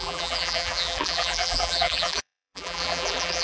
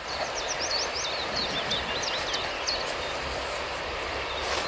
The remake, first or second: first